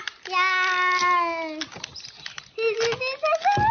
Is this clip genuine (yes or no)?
yes